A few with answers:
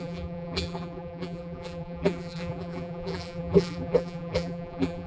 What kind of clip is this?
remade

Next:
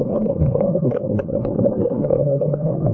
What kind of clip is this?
remade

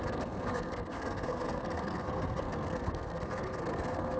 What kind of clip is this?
remade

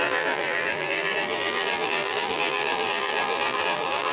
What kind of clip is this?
remade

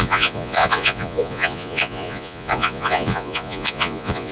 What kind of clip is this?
remade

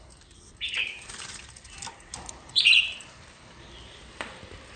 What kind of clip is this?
remade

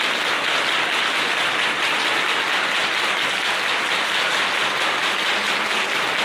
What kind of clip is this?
recorded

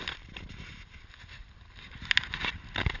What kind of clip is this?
recorded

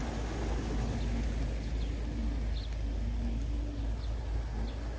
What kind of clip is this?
recorded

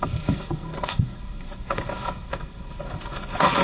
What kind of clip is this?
remade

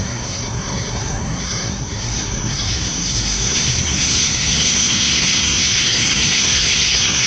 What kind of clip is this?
remade